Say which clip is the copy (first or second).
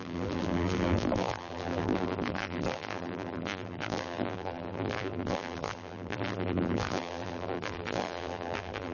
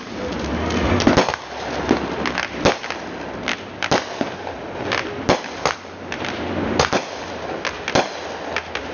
first